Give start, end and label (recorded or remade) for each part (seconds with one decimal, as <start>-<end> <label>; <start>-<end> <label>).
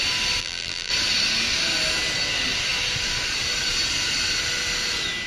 0.0-0.4 recorded; 0.4-0.9 remade; 0.9-5.3 recorded